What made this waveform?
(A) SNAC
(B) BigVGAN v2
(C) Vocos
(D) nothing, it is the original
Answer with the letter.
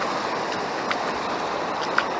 D